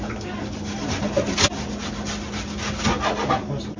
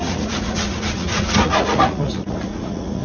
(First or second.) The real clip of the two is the first